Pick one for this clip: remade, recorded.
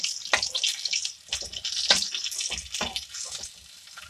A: recorded